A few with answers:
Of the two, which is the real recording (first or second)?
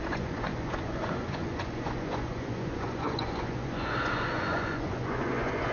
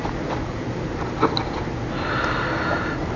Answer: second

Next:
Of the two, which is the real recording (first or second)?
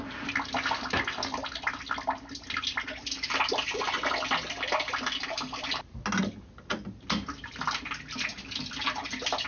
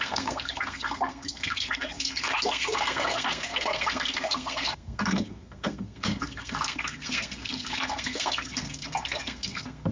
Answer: first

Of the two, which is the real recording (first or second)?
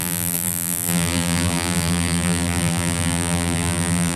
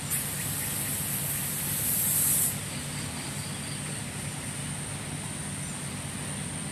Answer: second